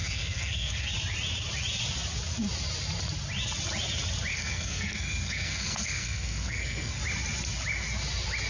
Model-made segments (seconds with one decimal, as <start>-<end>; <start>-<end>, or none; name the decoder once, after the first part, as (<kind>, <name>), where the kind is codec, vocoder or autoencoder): 0.0-0.9 (codec, SNAC); 4.3-7.0